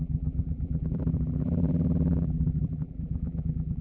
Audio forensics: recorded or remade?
remade